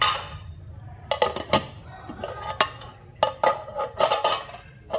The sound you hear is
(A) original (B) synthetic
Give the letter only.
A